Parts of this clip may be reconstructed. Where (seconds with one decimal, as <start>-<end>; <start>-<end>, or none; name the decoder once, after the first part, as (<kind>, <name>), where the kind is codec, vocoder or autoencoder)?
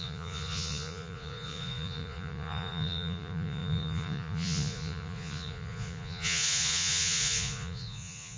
0.0-8.4 (vocoder, Vocos)